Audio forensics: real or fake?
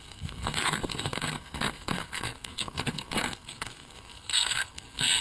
fake